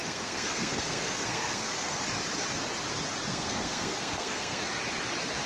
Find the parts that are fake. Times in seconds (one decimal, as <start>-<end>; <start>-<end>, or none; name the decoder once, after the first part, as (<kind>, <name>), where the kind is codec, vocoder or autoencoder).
0.0-2.0 (codec, SNAC); 3.3-4.6